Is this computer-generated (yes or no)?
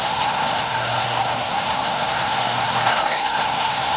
yes